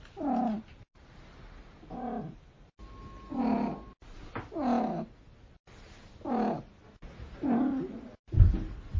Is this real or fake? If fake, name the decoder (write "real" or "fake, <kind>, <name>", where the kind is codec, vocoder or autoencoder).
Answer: real